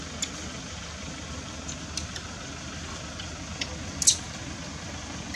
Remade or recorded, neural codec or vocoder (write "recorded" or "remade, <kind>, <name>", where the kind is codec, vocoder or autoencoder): recorded